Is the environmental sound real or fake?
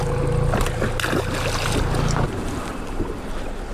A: real